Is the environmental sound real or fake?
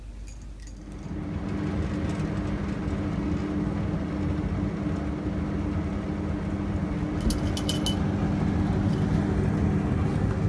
real